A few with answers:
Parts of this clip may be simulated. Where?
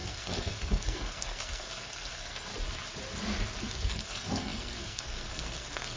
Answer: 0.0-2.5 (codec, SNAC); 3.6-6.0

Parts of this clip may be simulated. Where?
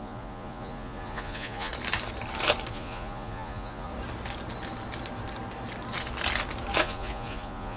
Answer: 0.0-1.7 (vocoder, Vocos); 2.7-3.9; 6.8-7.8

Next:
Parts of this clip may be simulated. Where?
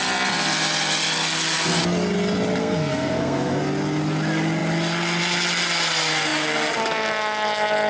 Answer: 2.6-3.6 (codec, SNAC)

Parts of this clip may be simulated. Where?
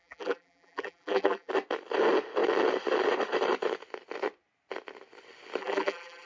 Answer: 0.0-1.5 (vocoder, BigVGAN v2); 5.6-6.3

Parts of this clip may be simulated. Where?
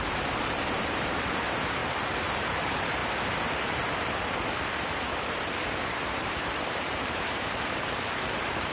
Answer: 0.0-3.0 (vocoder, BigVGAN v2); 4.6-8.7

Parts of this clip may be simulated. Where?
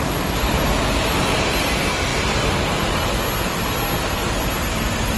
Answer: none